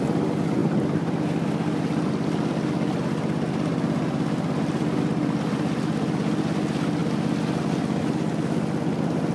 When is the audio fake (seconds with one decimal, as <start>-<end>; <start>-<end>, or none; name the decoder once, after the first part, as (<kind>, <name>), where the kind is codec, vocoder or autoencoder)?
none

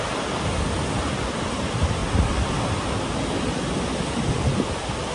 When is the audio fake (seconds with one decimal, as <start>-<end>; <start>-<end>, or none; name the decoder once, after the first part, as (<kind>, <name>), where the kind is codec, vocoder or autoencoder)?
none

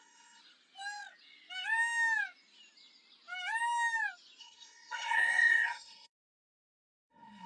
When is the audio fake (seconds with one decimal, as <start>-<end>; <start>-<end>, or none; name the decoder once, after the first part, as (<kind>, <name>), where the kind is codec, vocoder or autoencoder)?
0.0-0.4 (codec, SNAC); 4.4-7.5

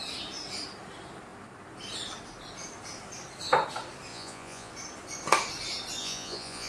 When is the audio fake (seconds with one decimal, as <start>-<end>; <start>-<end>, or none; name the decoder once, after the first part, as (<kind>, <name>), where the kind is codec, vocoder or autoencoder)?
4.1-4.7 (vocoder, Vocos); 6.0-6.7

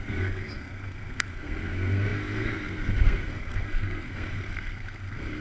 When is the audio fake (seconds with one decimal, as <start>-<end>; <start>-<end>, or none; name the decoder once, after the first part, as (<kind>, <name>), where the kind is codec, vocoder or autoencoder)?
0.0-5.4 (codec, SNAC)